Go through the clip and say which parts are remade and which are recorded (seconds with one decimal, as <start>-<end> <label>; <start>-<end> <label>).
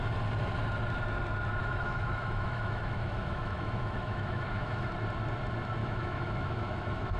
0.0-1.6 recorded; 1.6-4.9 remade; 4.9-5.8 recorded; 5.8-7.2 remade